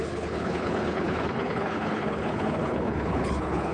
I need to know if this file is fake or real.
fake